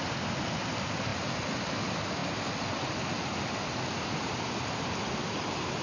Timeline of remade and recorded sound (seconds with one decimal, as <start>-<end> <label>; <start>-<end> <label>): 0.0-5.8 recorded